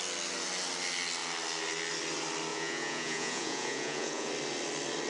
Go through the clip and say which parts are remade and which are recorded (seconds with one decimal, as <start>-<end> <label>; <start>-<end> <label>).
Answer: 0.0-2.5 recorded; 2.5-4.3 remade; 4.3-5.1 recorded